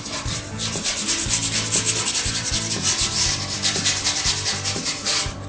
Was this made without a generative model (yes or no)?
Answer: no